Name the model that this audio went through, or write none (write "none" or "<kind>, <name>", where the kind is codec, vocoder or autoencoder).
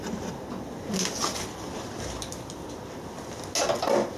none